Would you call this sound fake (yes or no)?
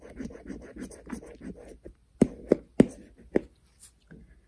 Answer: no